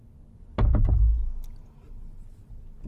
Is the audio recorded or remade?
recorded